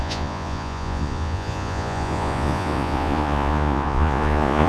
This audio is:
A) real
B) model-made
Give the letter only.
B